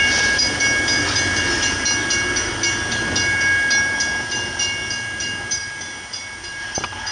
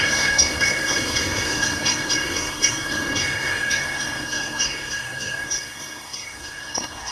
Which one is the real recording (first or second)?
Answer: first